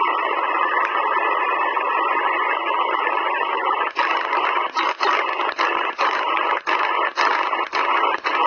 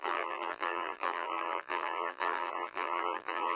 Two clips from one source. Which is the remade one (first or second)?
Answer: second